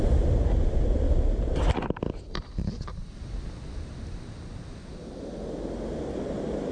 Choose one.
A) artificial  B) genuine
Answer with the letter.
B